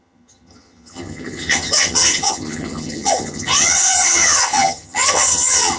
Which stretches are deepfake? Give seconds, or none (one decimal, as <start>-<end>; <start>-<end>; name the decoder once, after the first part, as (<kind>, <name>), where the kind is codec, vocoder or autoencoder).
0.0-5.8 (vocoder, HiFi-GAN)